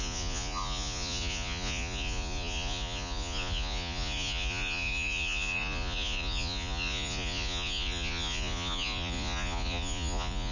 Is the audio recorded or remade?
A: remade